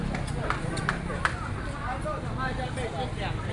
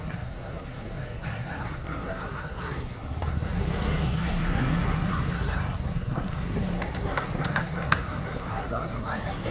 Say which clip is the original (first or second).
first